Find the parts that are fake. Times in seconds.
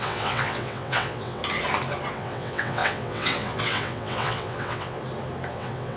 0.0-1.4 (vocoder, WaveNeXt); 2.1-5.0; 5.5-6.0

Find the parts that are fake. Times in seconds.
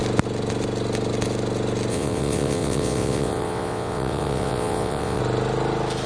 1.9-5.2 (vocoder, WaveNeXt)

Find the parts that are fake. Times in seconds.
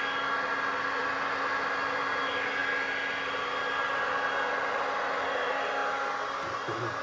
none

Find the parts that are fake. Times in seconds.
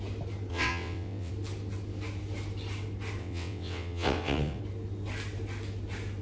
0.5-1.3 (vocoder, WaveNeXt); 3.2-4.6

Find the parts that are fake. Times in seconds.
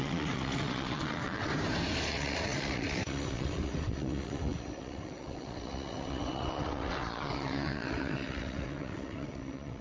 0.0-1.5 (vocoder, WaveNeXt); 2.1-9.8